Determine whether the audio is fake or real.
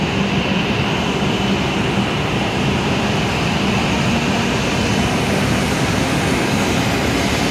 real